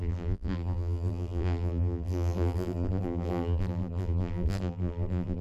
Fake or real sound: fake